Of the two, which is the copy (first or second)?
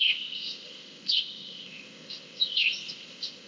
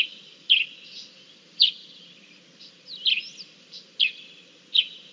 first